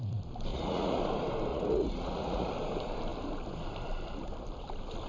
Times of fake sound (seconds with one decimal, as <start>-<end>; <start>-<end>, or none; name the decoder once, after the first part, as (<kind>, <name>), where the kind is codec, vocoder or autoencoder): 0.5-1.0 (vocoder, Vocos); 1.5-2.5